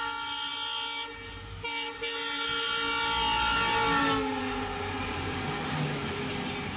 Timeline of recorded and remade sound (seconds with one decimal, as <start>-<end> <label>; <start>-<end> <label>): 0.0-6.8 recorded

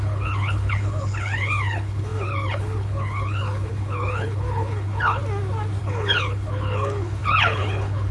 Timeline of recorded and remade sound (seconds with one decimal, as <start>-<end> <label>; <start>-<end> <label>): 0.0-5.2 remade; 5.2-5.8 recorded; 5.8-8.1 remade

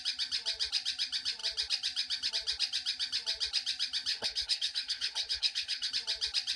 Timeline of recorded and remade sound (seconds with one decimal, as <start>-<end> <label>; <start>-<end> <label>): 0.0-4.1 recorded; 4.1-5.9 remade; 5.9-6.6 recorded

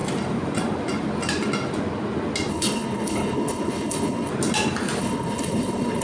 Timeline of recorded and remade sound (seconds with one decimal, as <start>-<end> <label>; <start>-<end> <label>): 0.0-2.5 recorded; 2.5-4.3 remade; 4.3-5.0 recorded; 5.0-6.0 remade

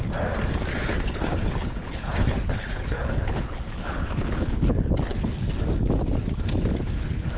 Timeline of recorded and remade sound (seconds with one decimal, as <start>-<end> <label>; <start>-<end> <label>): 0.0-0.7 recorded; 0.7-4.9 remade; 4.9-7.4 recorded

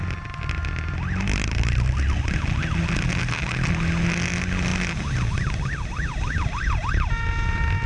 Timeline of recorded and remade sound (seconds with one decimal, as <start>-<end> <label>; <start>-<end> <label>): 0.0-7.9 recorded